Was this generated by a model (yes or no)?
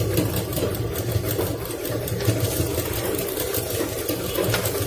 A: no